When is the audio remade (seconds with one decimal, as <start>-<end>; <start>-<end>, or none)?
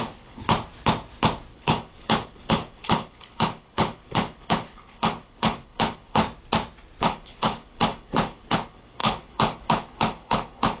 0.0-0.4; 1.5-6.2; 7.0-10.8